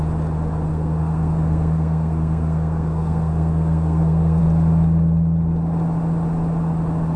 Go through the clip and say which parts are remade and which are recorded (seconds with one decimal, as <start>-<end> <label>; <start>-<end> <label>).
0.0-0.7 recorded; 0.7-4.4 remade; 4.4-7.2 recorded